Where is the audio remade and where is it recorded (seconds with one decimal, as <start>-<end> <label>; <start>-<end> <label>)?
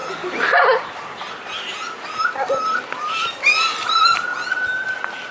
0.0-5.3 remade